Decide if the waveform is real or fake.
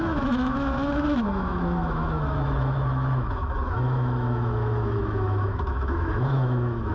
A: fake